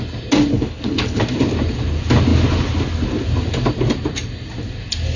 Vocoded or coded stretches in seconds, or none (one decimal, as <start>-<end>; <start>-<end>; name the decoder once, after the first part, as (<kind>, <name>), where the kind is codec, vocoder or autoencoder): 0.5-1.2 (codec, HILCodec)